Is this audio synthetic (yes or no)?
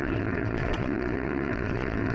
yes